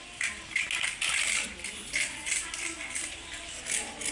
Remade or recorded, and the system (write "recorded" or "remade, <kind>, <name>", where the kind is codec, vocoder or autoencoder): recorded